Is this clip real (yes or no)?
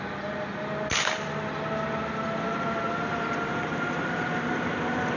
yes